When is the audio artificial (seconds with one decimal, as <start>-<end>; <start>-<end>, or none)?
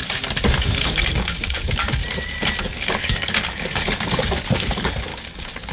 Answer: 0.5-2.0; 2.6-5.1